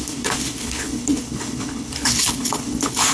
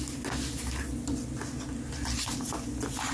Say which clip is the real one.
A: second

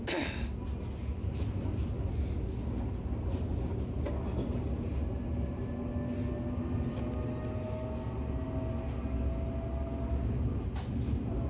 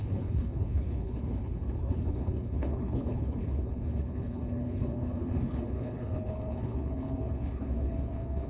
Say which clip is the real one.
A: first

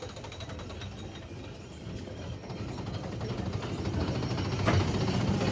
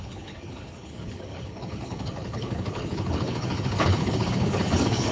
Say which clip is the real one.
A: first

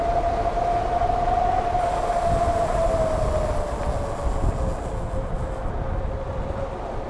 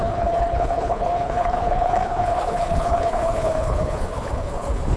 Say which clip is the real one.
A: first